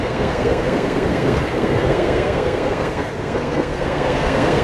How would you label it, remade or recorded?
remade